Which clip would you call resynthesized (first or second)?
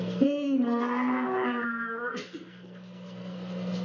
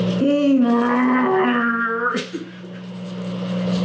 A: first